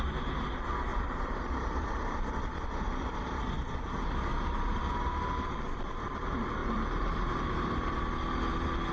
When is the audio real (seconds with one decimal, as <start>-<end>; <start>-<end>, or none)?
0.0-0.9; 1.9-4.3; 4.8-6.6; 7.7-8.9